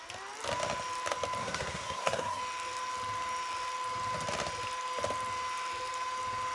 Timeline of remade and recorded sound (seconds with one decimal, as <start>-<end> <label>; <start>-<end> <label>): 0.0-1.4 recorded; 1.4-2.4 remade; 2.4-6.5 recorded